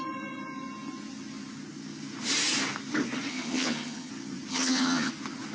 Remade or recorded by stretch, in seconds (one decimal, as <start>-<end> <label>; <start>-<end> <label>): 0.0-3.3 recorded; 3.3-4.1 remade; 4.1-4.5 recorded; 4.5-5.1 remade; 5.1-5.5 recorded